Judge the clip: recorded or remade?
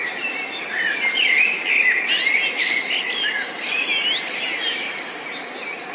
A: recorded